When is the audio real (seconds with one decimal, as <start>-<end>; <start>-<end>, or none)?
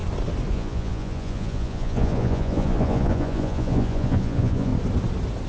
0.0-0.5; 4.7-5.5